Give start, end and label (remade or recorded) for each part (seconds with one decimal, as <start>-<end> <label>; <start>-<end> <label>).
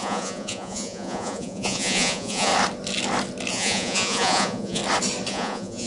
0.0-2.5 remade; 2.5-3.5 recorded; 3.5-4.8 remade; 4.8-5.3 recorded; 5.3-5.9 remade